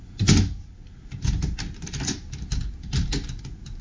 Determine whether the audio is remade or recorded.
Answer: recorded